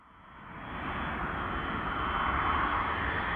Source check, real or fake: real